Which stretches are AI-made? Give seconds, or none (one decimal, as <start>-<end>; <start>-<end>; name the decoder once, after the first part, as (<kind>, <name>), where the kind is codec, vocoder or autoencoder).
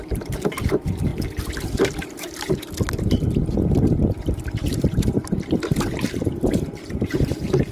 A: 0.0-1.1 (vocoder, BigVGAN v2); 4.2-7.7